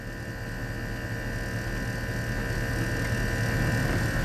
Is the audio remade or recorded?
recorded